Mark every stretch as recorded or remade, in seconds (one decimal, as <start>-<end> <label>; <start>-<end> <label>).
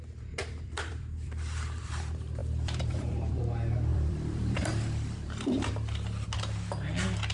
0.0-0.4 recorded; 0.4-1.8 remade; 1.8-2.4 recorded; 2.4-3.4 remade; 3.4-3.9 recorded; 3.9-5.7 remade; 5.7-7.3 recorded